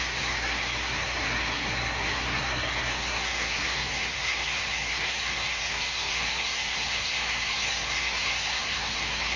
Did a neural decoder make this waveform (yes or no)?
yes